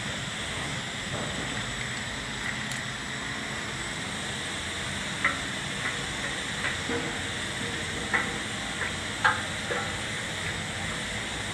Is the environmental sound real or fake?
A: real